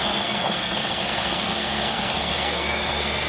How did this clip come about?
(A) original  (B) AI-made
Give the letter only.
B